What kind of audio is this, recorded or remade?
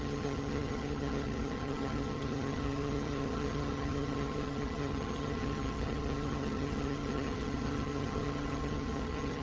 remade